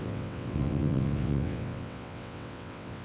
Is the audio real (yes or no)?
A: no